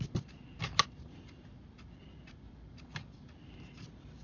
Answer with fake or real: real